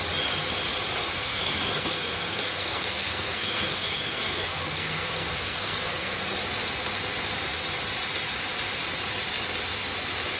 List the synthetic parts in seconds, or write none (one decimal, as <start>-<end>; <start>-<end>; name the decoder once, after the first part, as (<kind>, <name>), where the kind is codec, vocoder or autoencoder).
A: 1.0-6.2 (codec, SNAC)